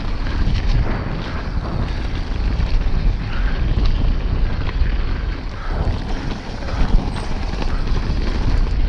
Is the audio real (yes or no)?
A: yes